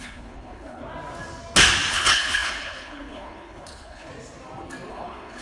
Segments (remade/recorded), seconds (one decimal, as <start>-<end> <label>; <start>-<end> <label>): 0.0-0.8 remade; 0.8-1.9 recorded; 1.9-4.1 remade; 4.1-4.9 recorded; 4.9-5.4 remade